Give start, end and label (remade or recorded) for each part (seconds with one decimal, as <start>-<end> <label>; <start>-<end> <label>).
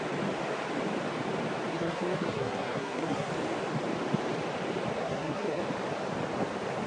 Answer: 0.0-1.7 recorded; 1.7-3.3 remade; 3.3-5.0 recorded; 5.0-5.6 remade; 5.6-6.9 recorded